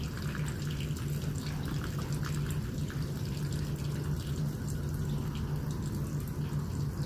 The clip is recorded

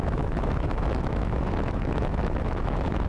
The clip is remade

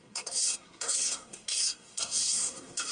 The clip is remade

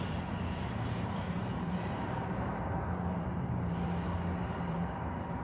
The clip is remade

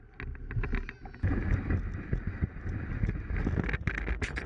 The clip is recorded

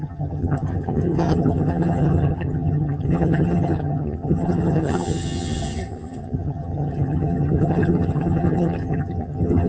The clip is remade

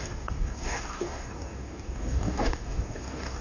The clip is remade